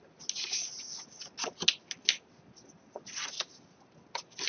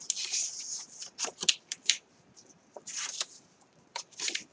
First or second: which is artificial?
second